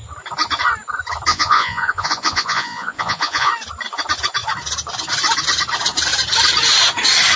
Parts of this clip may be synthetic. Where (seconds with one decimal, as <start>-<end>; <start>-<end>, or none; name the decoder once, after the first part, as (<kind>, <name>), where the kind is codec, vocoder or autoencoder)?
1.3-3.5 (vocoder, Vocos)